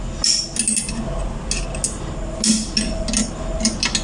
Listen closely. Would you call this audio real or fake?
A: real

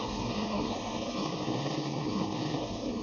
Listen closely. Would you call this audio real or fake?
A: fake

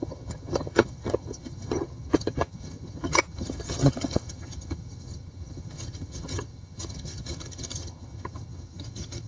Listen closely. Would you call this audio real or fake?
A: fake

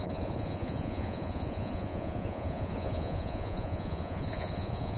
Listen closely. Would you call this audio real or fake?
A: fake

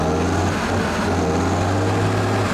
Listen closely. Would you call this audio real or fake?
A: real